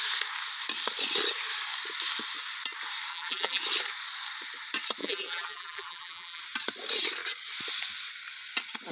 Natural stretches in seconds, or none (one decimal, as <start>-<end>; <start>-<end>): 0.0-3.1; 3.6-5.0; 6.4-8.9